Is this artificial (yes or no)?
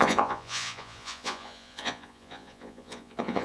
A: yes